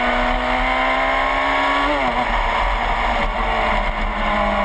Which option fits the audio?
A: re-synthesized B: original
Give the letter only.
B